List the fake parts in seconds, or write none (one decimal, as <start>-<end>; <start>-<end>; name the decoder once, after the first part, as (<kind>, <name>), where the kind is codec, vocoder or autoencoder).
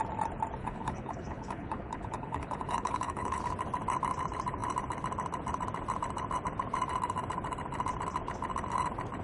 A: 0.6-3.4 (codec, HILCodec)